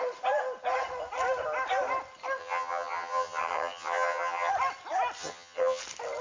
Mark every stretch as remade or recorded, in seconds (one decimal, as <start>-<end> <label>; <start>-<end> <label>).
0.0-2.4 recorded; 2.4-4.5 remade; 4.5-5.2 recorded; 5.2-5.8 remade; 5.8-6.2 recorded